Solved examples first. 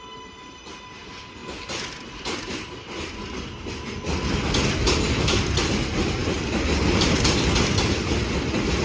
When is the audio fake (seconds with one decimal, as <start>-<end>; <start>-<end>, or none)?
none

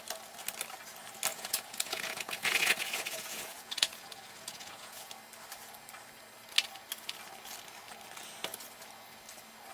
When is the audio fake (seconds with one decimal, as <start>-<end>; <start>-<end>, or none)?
1.3-5.1

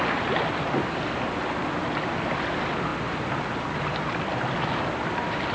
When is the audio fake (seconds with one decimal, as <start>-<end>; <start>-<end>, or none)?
none